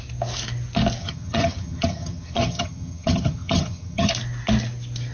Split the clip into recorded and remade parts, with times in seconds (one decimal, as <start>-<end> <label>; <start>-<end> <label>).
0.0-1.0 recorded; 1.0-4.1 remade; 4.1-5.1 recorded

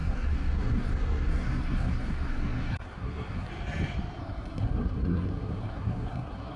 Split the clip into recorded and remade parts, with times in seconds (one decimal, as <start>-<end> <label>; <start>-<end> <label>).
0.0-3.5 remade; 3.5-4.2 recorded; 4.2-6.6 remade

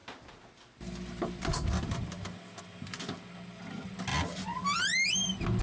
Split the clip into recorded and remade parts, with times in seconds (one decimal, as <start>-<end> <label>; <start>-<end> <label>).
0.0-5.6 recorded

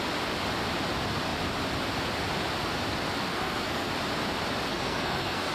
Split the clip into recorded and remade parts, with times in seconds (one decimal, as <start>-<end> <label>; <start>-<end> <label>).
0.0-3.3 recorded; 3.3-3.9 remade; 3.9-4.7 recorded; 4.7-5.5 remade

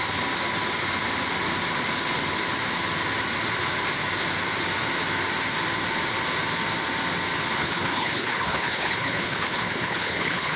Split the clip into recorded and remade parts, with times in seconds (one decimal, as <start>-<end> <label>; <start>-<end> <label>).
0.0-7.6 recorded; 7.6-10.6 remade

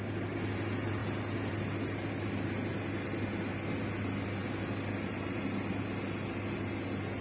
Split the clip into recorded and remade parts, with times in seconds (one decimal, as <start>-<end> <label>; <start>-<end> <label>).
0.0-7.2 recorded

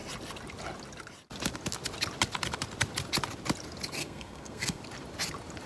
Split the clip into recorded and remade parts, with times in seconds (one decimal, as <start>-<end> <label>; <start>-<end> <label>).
0.0-4.0 recorded; 4.0-4.8 remade; 4.8-5.7 recorded